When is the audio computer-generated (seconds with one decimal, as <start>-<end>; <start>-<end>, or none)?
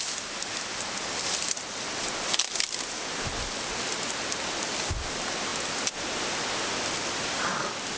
none